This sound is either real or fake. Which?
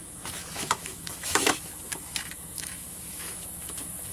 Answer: fake